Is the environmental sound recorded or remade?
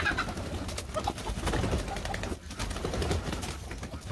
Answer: recorded